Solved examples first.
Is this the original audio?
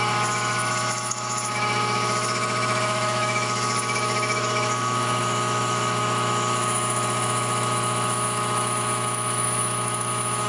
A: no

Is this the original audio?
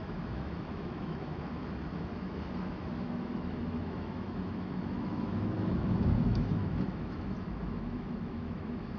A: no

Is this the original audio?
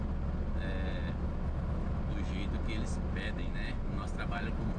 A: yes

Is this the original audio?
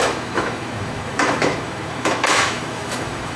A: no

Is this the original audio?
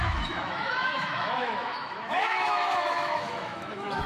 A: no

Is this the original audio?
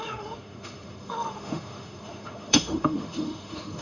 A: no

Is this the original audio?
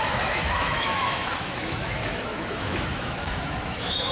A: no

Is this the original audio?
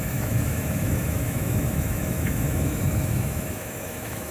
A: no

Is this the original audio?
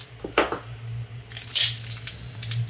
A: yes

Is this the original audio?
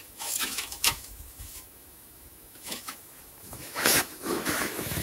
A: no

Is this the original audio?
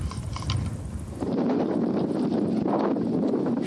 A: yes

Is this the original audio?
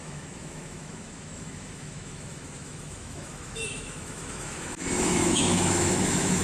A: no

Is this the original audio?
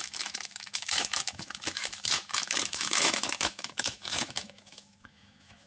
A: no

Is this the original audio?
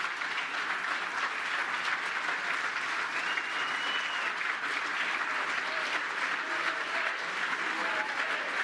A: yes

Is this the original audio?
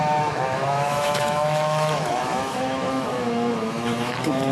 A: no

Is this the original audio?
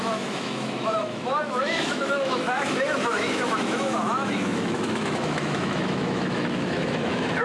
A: no